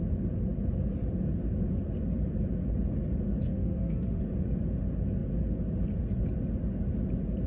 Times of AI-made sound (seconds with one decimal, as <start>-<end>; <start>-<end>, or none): 3.5-4.2